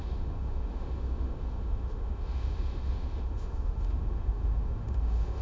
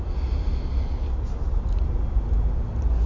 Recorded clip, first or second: second